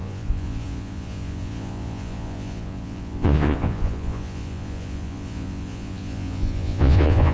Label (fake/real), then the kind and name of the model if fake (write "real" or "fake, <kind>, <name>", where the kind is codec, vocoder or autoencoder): fake, vocoder, Vocos